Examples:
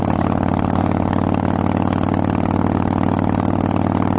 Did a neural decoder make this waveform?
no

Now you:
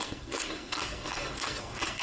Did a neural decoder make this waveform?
yes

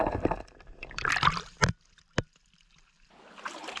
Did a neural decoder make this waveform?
no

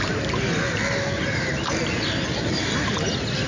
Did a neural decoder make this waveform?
no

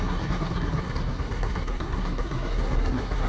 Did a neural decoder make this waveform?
yes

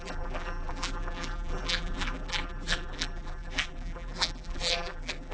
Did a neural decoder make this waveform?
yes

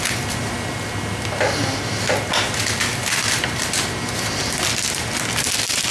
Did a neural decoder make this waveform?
no